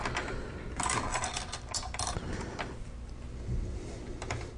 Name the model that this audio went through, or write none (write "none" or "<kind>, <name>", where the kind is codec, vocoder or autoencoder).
none